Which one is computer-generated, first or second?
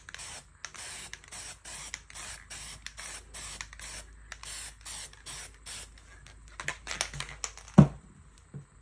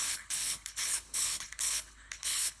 second